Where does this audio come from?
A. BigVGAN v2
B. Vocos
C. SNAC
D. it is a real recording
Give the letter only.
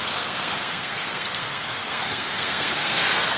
C